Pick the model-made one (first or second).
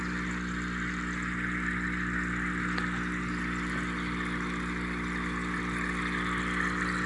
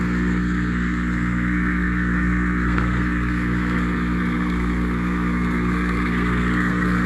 second